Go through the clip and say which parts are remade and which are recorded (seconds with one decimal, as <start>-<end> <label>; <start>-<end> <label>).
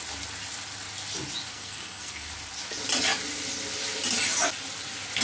0.0-1.5 recorded; 1.5-2.3 remade; 2.3-5.2 recorded